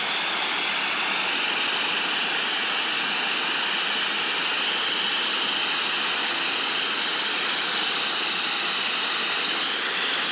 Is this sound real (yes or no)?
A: yes